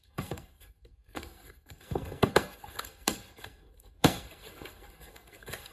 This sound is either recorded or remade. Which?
remade